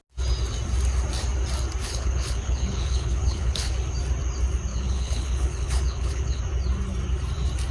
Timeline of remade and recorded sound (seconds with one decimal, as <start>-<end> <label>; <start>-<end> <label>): 0.0-1.8 recorded; 1.8-3.7 remade; 3.7-4.7 recorded; 4.7-6.4 remade; 6.4-7.7 recorded